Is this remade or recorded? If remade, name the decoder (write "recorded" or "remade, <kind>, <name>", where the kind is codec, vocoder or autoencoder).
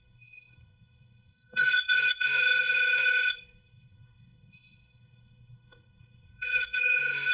remade, codec, SNAC